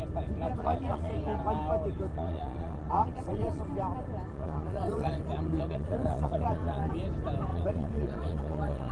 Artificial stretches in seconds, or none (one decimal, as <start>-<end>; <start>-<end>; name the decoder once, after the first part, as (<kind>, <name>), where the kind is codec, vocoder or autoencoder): 0.6-1.1 (vocoder, Vocos); 2.1-3.6; 4.3-6.9; 7.5-8.9